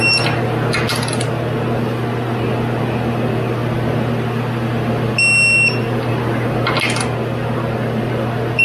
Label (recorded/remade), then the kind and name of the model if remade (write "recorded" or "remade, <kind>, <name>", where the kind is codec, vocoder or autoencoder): recorded